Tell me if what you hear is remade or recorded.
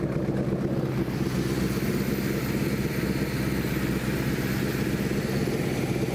recorded